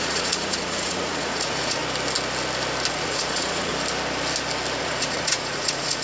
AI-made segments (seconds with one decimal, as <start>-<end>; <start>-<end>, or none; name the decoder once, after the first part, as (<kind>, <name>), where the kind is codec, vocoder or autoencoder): 0.0-1.8 (vocoder, Vocos); 2.9-3.7; 4.8-6.0